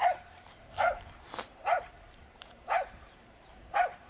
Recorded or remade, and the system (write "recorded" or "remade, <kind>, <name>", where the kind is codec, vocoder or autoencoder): remade, vocoder, BigVGAN v2